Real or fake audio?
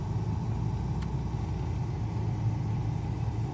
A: real